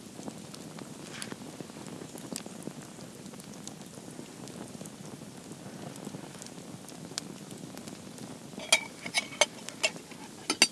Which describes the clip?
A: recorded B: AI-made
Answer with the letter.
A